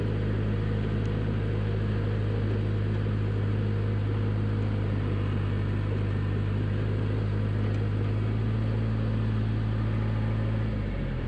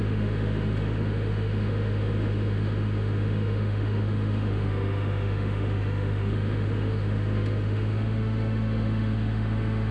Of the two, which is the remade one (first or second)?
second